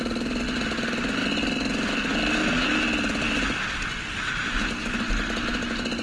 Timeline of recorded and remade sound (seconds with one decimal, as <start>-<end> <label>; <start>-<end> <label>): 0.0-6.0 recorded

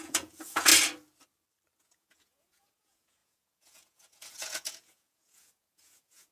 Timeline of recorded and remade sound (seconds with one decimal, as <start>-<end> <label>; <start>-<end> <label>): 0.0-0.7 remade; 0.7-1.8 recorded; 1.8-6.3 remade

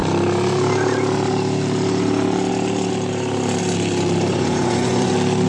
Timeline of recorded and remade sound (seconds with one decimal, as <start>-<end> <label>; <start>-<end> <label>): 0.0-4.3 recorded; 4.3-5.1 remade; 5.1-5.5 recorded